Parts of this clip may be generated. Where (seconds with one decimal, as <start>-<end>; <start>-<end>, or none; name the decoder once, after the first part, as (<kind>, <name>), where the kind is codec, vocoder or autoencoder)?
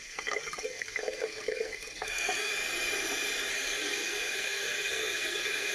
0.0-2.5 (codec, SNAC); 3.5-5.7